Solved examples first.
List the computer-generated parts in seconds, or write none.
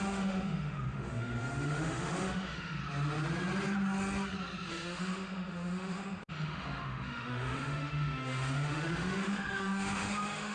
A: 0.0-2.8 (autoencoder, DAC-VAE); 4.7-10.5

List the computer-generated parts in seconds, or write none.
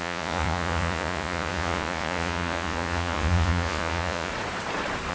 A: 0.0-4.3 (vocoder, Vocos)